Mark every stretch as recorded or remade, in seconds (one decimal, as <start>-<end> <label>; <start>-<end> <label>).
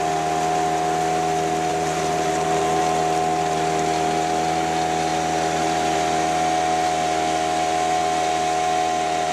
0.0-1.7 recorded; 1.7-2.8 remade; 2.8-9.3 recorded